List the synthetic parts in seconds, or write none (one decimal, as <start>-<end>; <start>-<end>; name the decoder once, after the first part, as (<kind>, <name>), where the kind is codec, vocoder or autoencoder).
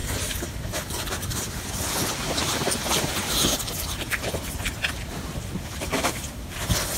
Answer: 0.0-1.8 (vocoder, BigVGAN v2); 2.4-6.6